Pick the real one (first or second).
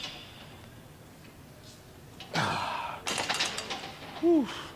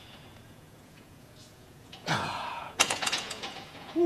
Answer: first